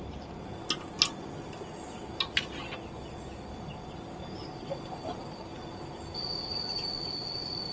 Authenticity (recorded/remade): recorded